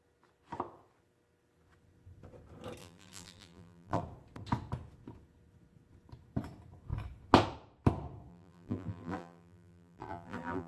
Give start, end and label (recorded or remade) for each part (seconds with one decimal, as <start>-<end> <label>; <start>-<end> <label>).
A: 0.0-2.8 recorded; 2.8-4.0 remade; 4.0-8.3 recorded; 8.3-10.7 remade